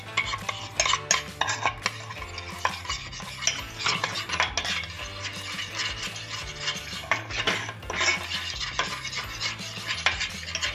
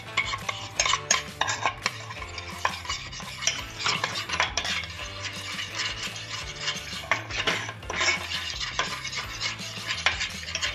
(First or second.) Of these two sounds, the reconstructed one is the second